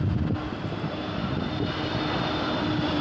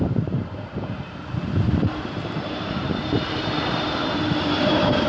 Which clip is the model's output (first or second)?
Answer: second